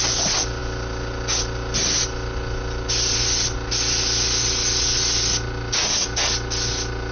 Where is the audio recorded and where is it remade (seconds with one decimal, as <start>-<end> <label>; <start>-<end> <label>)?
0.0-7.1 recorded